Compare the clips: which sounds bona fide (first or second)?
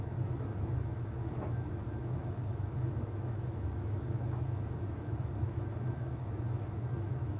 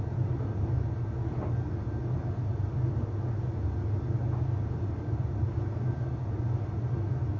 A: second